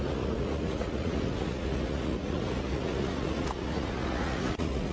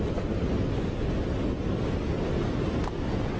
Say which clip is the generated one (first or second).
first